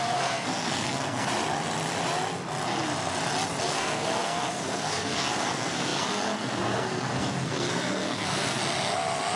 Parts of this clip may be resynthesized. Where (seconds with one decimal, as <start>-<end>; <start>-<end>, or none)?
0.0-1.3; 3.6-8.6